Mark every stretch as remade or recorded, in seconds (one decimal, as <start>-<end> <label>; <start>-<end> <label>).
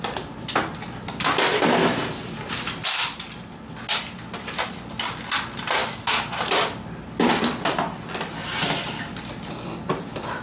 0.0-10.4 recorded